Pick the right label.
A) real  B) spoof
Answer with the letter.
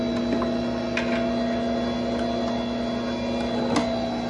A